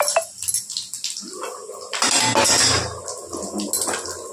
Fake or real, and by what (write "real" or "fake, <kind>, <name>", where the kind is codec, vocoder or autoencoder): real